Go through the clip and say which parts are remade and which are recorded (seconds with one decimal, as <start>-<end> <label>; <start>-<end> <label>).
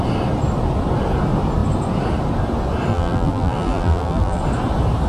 0.0-2.9 recorded; 2.9-4.4 remade; 4.4-5.1 recorded